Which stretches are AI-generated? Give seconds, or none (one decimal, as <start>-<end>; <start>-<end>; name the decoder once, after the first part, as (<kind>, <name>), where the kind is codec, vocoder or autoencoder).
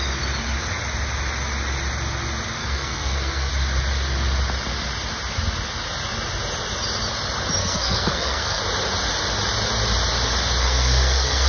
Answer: 2.6-3.5 (codec, SNAC); 7.6-8.6; 10.6-11.5